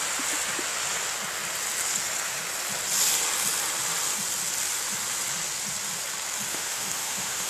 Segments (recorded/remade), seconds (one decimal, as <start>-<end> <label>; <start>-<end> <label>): 0.0-6.5 recorded; 6.5-7.5 remade